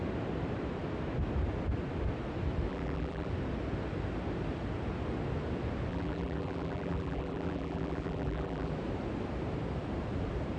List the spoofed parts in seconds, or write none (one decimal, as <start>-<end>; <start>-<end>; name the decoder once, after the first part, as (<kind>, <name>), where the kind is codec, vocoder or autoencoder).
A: 2.7-3.3 (vocoder, BigVGAN v2); 5.9-8.7